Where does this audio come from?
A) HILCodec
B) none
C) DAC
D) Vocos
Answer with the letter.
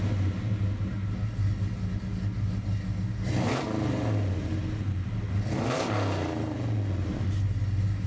B